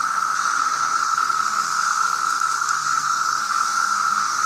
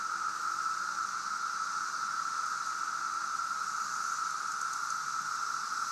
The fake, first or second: first